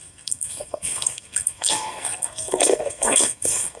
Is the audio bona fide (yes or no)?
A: no